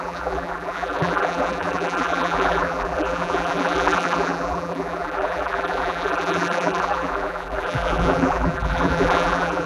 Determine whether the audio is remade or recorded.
remade